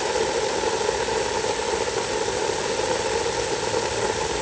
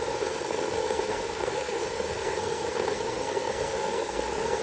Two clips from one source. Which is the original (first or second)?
first